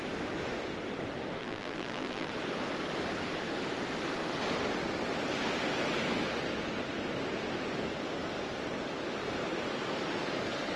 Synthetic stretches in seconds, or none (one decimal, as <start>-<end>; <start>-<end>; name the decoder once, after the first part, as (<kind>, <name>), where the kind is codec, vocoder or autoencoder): 1.4-2.3 (vocoder, BigVGAN v2)